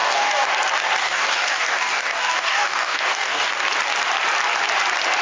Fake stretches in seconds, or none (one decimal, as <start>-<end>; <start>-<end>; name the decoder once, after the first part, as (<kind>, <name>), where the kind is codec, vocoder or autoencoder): 0.0-0.5 (codec, DAC); 1.0-3.5